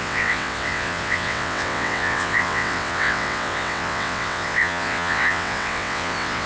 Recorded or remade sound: remade